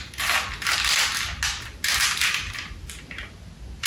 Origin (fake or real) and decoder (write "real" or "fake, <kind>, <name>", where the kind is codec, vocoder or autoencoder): real